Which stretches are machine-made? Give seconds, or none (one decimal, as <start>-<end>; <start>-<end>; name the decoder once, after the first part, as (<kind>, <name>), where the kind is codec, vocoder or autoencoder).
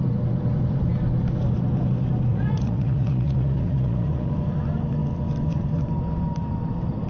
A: 2.3-4.3 (vocoder, Vocos)